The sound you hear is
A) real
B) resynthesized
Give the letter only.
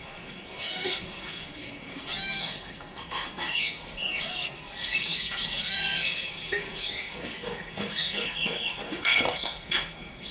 B